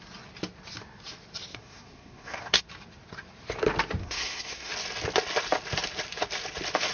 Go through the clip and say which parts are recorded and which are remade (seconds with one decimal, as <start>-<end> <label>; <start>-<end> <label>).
0.0-1.5 recorded; 1.5-2.6 remade; 2.6-4.0 recorded; 4.0-4.7 remade; 4.7-6.9 recorded